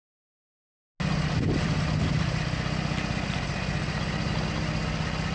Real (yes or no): yes